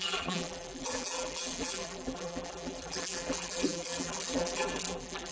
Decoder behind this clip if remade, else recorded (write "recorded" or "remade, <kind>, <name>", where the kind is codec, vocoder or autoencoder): remade, vocoder, BigVGAN v2